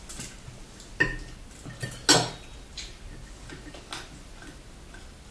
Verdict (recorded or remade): recorded